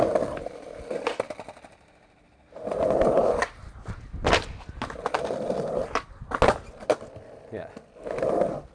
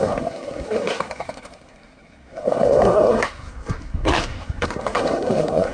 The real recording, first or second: first